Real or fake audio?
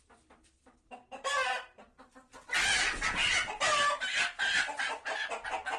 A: real